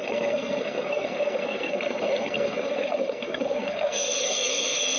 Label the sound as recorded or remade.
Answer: remade